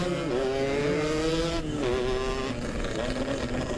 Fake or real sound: real